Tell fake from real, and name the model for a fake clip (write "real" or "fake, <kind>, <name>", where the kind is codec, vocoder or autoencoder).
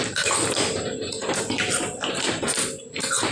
real